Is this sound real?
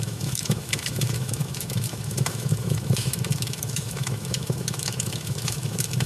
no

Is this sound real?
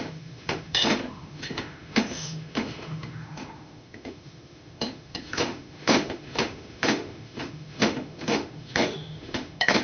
no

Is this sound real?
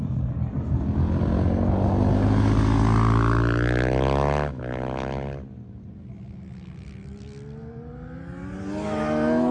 yes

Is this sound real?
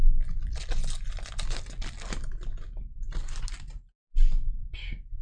yes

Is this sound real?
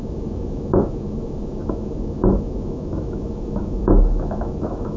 no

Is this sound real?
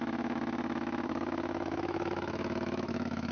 no